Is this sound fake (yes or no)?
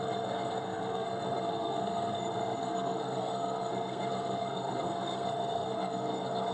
yes